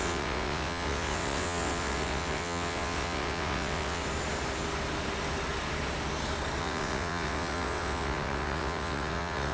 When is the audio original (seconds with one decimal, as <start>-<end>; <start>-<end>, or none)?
4.0-6.6